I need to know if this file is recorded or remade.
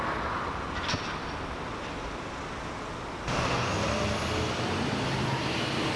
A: recorded